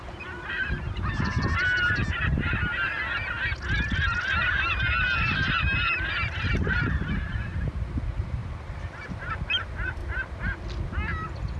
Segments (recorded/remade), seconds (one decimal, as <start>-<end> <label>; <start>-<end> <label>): 0.0-2.0 remade; 2.0-6.1 recorded; 6.1-10.0 remade; 10.0-11.6 recorded

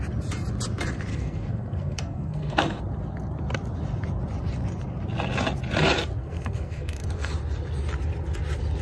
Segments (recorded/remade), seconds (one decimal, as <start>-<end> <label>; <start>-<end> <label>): 0.0-1.1 recorded; 1.1-2.8 remade; 2.8-6.2 recorded; 6.2-7.3 remade; 7.3-8.8 recorded

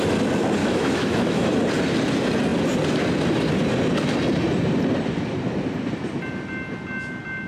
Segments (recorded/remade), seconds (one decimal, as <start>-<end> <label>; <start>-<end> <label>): 0.0-0.6 recorded; 0.6-1.5 remade; 1.5-7.5 recorded

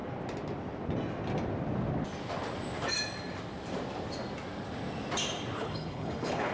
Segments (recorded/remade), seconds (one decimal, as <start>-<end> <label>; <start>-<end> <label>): 0.0-5.6 recorded; 5.6-6.5 remade

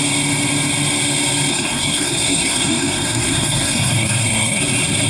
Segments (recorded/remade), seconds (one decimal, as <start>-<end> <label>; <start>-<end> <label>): 0.0-1.5 recorded; 1.5-4.6 remade; 4.6-5.1 recorded

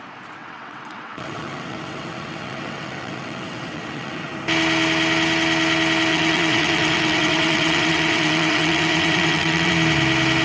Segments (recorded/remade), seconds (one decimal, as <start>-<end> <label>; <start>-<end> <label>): 0.0-0.4 recorded; 0.4-4.3 remade; 4.3-6.1 recorded; 6.1-9.7 remade; 9.7-10.4 recorded